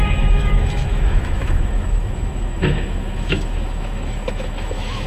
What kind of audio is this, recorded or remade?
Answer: remade